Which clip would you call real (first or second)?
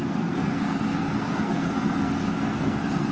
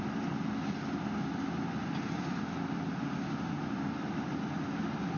second